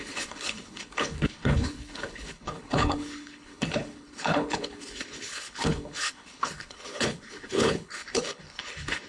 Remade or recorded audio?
remade